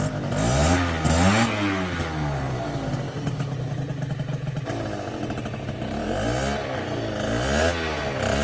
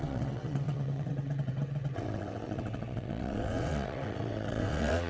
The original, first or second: first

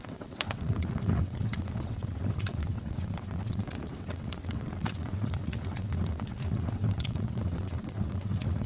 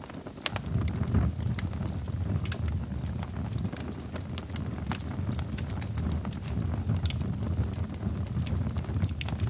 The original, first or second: second